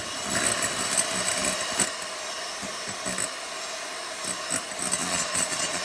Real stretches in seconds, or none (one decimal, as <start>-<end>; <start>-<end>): 0.0-5.0